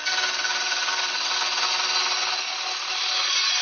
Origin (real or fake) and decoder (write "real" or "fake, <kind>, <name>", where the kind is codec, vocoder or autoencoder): real